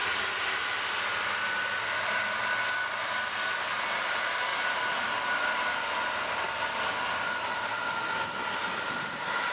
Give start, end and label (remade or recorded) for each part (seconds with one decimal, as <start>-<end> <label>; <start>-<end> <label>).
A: 0.0-9.5 recorded